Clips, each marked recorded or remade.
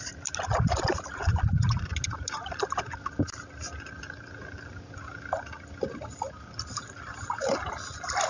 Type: recorded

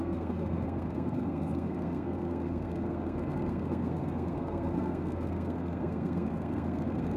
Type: remade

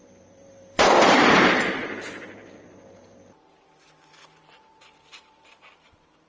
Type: remade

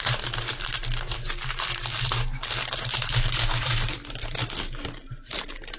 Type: recorded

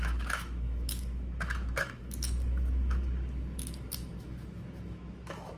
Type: remade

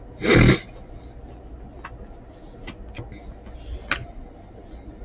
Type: recorded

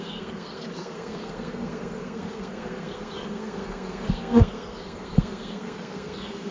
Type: remade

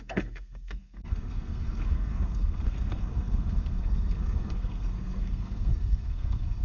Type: remade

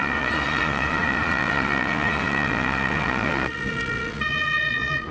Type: remade